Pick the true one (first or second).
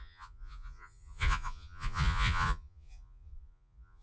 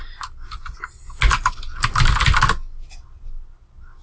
second